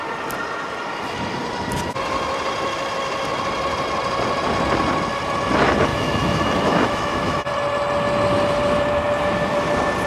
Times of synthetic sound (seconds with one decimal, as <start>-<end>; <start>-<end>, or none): 5.9-7.5